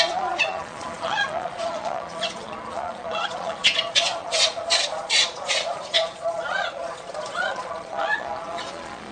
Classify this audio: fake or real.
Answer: fake